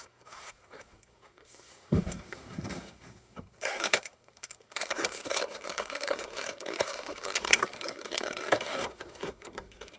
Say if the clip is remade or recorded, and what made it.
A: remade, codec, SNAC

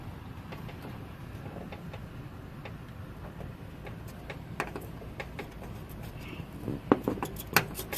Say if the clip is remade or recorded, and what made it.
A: recorded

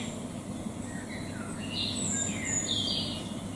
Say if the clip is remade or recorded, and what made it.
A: recorded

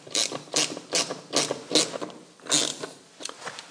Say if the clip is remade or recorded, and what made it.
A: recorded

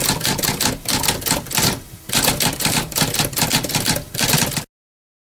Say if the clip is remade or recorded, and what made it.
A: recorded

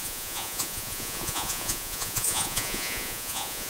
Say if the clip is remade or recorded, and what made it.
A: remade, vocoder, Vocos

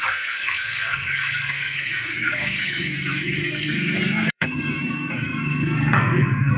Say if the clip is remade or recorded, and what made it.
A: remade, codec, SNAC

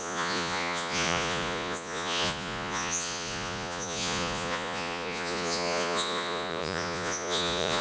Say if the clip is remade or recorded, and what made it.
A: remade, vocoder, Vocos